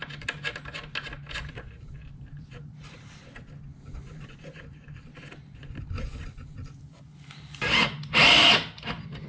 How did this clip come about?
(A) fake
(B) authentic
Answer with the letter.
B